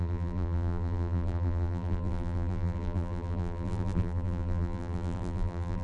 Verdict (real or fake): fake